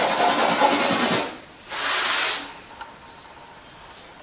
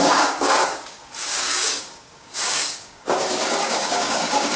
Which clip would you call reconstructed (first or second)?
second